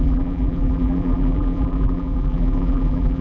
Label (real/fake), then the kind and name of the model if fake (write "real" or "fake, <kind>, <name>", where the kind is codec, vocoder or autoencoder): fake, vocoder, BigVGAN v2